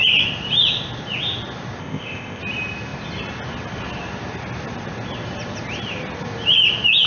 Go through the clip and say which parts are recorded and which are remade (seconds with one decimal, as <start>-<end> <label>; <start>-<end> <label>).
0.0-1.8 recorded; 1.8-2.4 remade; 2.4-7.1 recorded